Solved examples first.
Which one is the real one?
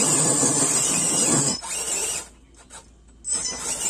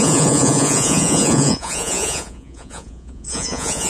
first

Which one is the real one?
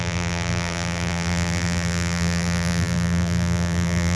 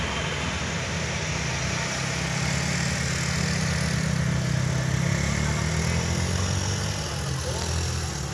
second